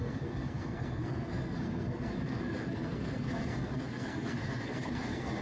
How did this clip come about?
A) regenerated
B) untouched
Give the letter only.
A